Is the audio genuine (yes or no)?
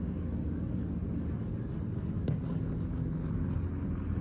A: yes